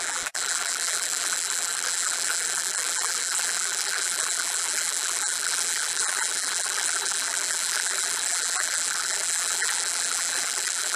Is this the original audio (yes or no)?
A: no